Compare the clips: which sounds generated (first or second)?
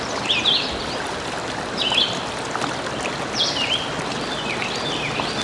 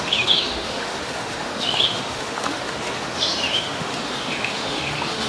second